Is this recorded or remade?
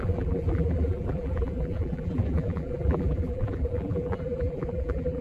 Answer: remade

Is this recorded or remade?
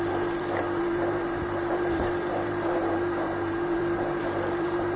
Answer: remade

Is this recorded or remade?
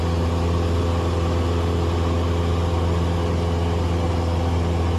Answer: recorded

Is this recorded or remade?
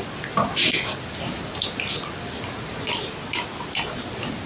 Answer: recorded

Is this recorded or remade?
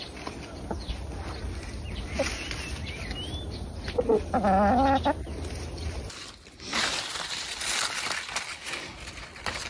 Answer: recorded